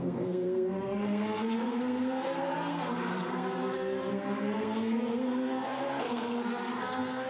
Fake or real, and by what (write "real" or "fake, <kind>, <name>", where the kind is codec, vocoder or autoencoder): fake, codec, SNAC